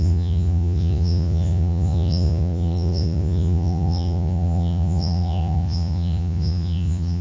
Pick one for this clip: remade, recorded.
remade